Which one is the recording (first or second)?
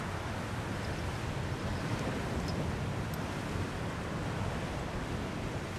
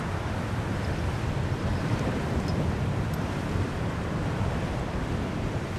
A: first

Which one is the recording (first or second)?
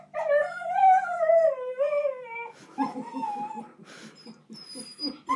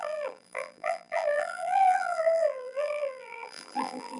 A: first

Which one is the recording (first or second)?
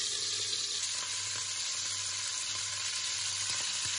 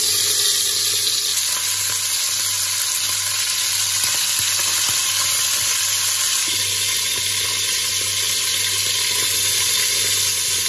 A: second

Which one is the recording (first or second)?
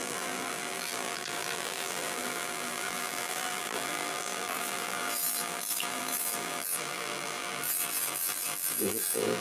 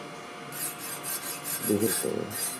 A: second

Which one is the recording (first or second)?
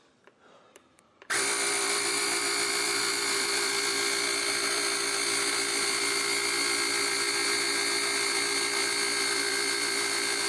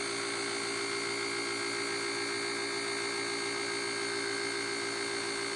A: second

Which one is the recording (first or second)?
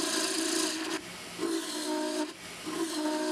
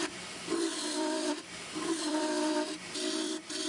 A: first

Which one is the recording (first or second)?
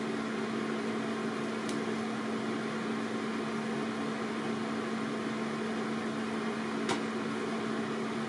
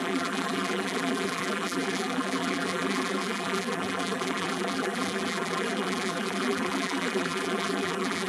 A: first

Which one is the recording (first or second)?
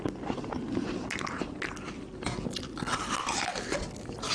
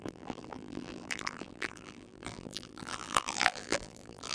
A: first